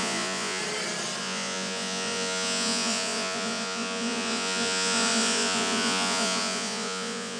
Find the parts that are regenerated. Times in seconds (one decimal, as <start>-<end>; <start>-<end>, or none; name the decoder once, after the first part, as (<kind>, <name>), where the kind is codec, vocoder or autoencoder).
0.0-0.6 (vocoder, Vocos); 1.2-7.4